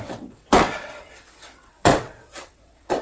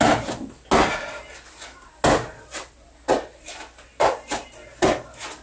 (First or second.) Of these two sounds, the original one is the second